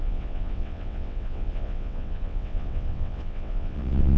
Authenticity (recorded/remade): remade